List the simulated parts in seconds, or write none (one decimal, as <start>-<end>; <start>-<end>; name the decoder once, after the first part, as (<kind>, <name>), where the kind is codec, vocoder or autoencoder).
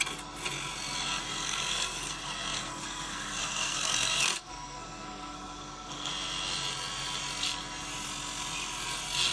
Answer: 1.2-6.1 (codec, SNAC)